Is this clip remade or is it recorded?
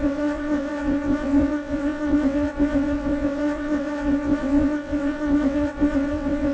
remade